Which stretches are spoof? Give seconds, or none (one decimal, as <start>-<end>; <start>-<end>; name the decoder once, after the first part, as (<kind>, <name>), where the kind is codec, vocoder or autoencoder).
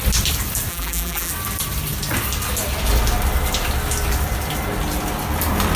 0.7-1.3 (vocoder, BigVGAN v2)